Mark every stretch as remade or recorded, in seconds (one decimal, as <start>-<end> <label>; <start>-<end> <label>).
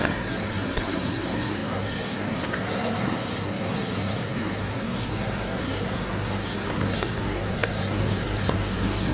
0.0-9.1 remade